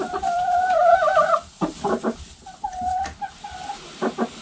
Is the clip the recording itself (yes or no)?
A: yes